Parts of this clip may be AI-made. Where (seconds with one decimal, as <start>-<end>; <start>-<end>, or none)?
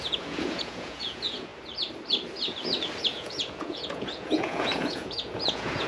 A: 0.0-1.5; 3.0-5.9